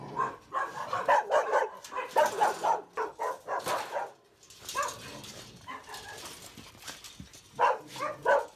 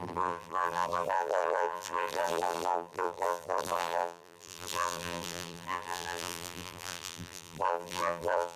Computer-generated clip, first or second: second